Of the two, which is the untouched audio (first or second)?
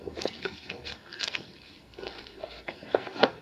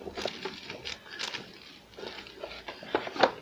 second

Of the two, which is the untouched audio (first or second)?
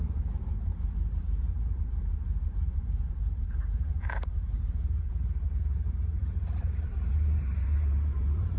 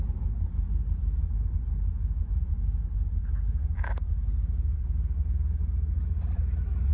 second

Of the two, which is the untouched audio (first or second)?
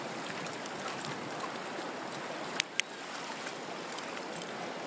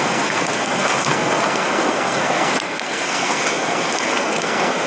first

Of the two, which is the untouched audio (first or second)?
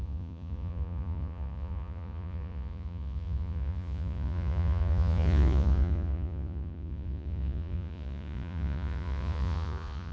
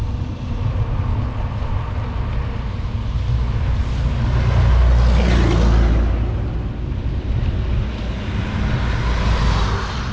second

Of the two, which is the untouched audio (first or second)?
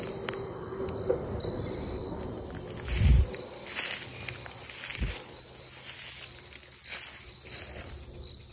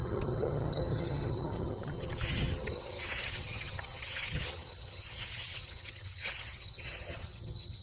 first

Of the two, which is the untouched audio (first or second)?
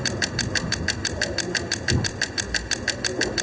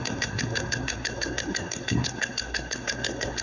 first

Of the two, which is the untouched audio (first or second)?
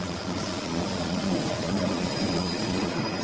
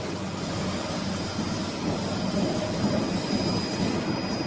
second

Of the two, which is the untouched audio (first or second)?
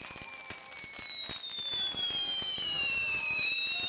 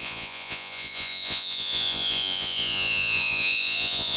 first